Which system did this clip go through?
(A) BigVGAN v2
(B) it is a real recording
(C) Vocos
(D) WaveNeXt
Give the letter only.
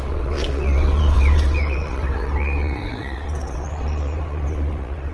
D